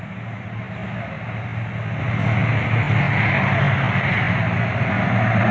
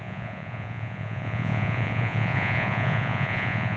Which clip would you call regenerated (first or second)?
second